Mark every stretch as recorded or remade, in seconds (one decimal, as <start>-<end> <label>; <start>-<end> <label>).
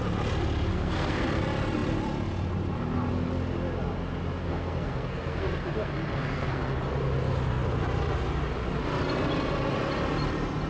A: 0.0-0.7 recorded; 0.7-1.4 remade; 1.4-4.4 recorded; 4.4-6.8 remade; 6.8-10.7 recorded